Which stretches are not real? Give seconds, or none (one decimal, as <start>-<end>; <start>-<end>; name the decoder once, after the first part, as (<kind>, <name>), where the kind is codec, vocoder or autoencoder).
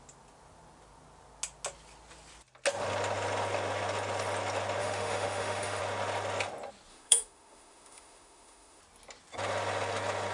4.8-5.8 (autoencoder, DAC-VAE); 6.9-8.8